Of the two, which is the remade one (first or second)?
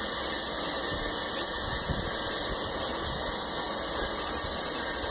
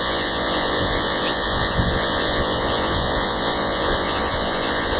second